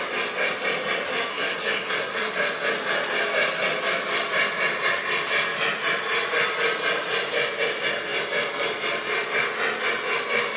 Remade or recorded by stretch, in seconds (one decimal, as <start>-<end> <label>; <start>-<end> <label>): 0.0-1.3 recorded; 1.3-2.3 remade; 2.3-10.6 recorded